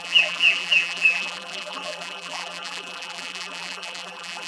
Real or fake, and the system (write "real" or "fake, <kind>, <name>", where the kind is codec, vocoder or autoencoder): fake, vocoder, BigVGAN v2